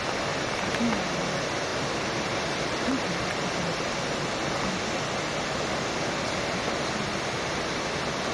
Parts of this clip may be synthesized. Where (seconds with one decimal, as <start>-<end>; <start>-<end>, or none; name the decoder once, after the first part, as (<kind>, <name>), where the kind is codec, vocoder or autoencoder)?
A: none